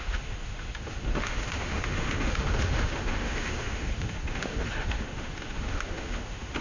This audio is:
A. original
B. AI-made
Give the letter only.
B